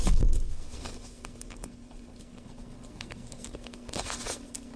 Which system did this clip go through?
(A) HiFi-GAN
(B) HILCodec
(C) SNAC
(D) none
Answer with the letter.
C